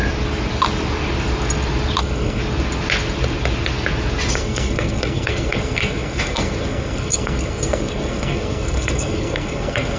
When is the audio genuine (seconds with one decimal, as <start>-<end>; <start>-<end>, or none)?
0.0-2.0; 2.4-4.3